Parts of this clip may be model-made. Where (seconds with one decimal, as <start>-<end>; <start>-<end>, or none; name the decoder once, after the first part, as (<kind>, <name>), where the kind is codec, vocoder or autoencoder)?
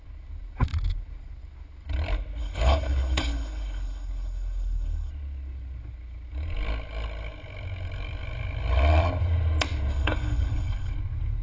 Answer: 2.4-5.1 (codec, HILCodec); 9.9-10.9